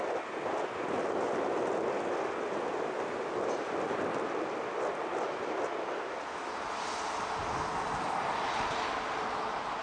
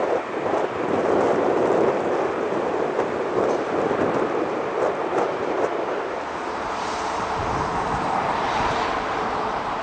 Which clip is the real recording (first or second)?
first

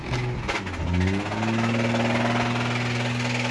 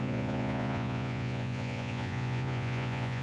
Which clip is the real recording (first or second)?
first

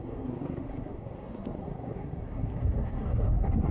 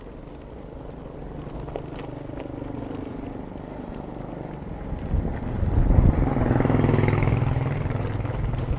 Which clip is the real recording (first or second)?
second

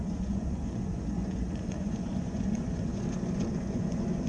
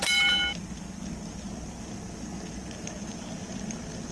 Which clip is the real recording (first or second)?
second